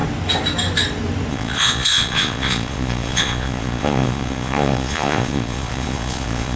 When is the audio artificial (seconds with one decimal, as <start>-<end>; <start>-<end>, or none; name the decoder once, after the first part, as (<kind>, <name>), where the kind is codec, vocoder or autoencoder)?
1.3-6.6 (vocoder, Vocos)

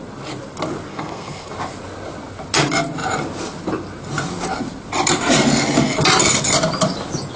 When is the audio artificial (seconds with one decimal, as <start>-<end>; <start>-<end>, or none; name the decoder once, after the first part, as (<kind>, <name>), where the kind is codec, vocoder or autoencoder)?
0.9-1.5 (codec, SNAC)

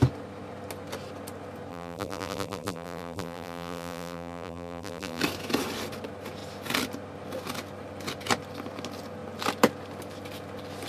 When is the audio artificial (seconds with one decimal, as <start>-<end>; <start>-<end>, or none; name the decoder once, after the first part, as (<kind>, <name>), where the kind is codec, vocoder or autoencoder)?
1.7-5.2 (vocoder, BigVGAN v2)

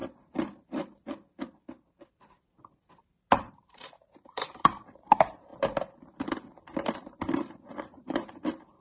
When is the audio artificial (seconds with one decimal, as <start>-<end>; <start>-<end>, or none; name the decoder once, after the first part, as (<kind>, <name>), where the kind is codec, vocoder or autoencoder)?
3.5-5.5 (vocoder, BigVGAN v2); 6.9-8.8

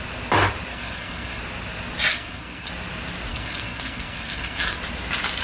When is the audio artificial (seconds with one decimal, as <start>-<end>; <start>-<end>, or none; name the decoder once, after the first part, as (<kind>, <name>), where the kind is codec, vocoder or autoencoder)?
0.7-1.4 (codec, SNAC); 2.1-2.7; 3.3-4.8

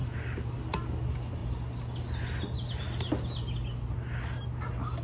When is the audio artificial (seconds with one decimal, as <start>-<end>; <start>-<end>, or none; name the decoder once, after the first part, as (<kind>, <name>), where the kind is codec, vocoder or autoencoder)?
none

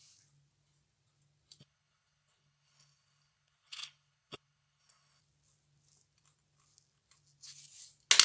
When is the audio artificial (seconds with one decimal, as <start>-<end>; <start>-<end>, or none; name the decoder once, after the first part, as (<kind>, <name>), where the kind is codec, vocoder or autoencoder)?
1.6-5.2 (codec, HILCodec)